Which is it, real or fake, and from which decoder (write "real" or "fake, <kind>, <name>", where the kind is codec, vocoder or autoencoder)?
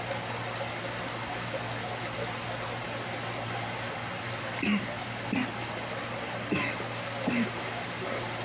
real